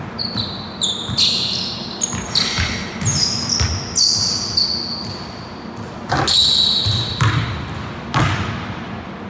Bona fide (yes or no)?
yes